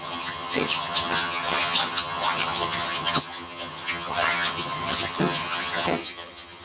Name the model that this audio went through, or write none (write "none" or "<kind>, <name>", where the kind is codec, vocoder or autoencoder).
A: vocoder, HiFi-GAN